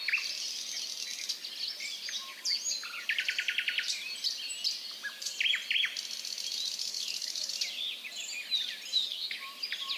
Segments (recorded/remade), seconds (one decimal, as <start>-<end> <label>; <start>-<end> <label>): 0.0-6.9 recorded; 6.9-7.5 remade; 7.5-8.9 recorded; 8.9-9.4 remade; 9.4-10.0 recorded